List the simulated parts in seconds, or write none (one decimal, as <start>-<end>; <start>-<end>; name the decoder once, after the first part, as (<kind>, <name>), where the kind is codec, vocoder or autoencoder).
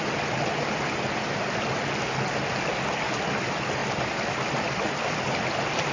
none